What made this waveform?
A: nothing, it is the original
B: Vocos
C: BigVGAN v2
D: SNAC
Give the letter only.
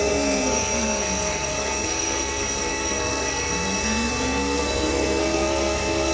D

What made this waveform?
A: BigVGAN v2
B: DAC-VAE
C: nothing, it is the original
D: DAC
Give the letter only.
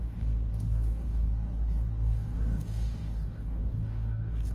D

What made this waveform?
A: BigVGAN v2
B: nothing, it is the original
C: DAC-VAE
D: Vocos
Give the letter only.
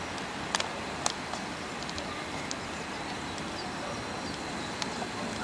B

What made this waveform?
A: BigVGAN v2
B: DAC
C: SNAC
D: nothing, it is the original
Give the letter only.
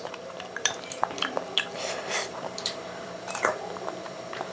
A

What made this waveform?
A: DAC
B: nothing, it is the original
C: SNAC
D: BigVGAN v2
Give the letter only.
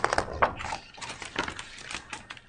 B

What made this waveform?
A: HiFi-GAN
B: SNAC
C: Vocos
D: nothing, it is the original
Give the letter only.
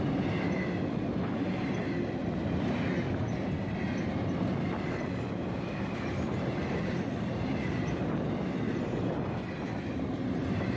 D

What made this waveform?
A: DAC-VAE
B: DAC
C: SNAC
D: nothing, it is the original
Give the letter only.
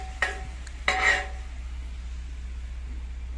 D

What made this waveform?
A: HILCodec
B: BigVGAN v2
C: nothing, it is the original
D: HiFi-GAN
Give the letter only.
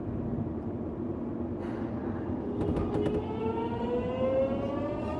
C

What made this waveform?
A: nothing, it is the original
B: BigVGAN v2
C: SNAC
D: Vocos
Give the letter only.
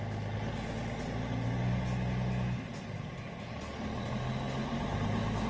A